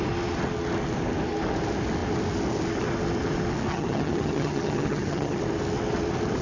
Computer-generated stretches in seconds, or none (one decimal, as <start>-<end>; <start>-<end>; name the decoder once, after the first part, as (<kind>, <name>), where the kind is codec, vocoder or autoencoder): 3.7-5.4 (vocoder, HiFi-GAN)